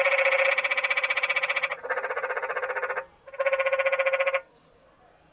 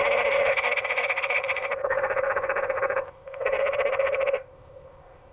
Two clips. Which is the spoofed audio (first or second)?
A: second